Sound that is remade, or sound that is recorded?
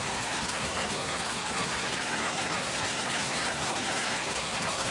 remade